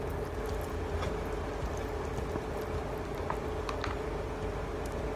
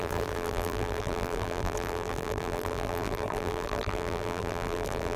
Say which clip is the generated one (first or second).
second